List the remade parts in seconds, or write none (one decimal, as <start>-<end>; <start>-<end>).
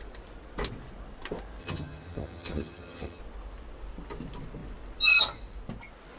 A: 1.6-3.2